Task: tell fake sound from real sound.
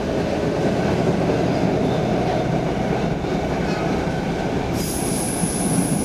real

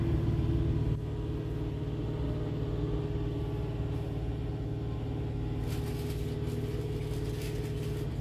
real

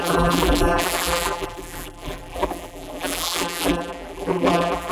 fake